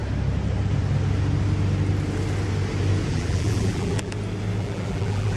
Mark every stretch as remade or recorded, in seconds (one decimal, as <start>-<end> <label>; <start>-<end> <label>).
0.0-3.1 recorded; 3.1-4.1 remade; 4.1-4.6 recorded; 4.6-5.4 remade